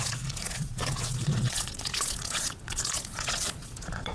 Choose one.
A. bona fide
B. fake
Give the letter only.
B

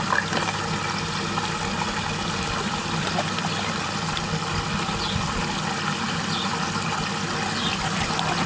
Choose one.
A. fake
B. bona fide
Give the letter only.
B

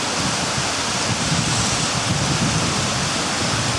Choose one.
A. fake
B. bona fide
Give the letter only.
B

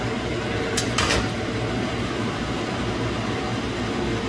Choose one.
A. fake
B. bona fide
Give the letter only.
B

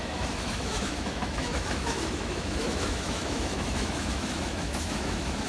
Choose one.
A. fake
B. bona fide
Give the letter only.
A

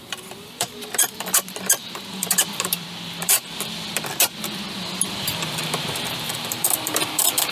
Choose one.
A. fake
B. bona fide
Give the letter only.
A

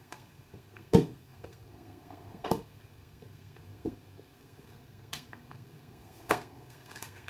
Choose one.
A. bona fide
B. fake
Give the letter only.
B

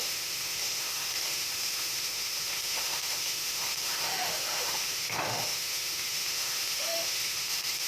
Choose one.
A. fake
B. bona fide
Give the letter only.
A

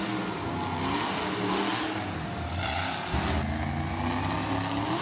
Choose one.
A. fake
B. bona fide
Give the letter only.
B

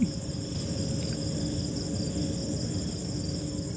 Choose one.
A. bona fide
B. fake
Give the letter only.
A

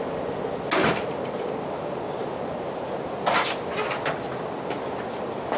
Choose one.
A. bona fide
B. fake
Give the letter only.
A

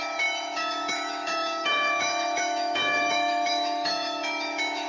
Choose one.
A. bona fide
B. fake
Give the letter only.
B